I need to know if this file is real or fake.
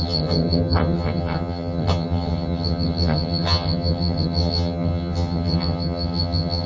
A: fake